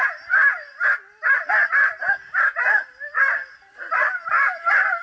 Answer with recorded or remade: recorded